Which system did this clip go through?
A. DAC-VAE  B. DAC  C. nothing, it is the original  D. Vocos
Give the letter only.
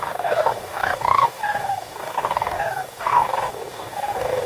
B